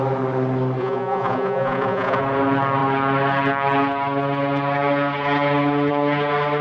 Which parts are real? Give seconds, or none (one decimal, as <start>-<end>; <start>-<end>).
0.0-0.8; 2.2-6.6